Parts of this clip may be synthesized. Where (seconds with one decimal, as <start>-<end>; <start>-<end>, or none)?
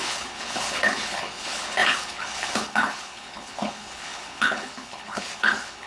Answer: 0.0-5.9